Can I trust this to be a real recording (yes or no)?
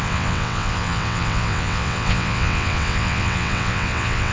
no